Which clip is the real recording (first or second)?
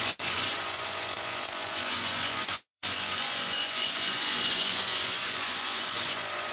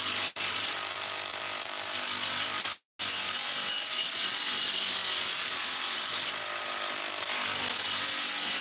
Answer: second